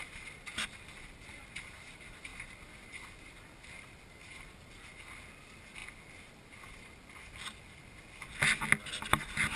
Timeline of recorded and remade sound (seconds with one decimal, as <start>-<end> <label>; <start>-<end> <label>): 0.0-9.6 recorded